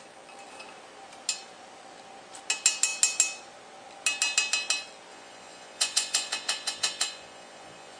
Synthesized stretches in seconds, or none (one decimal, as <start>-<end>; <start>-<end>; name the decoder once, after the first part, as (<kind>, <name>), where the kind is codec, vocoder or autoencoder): 5.1-8.0 (vocoder, Vocos)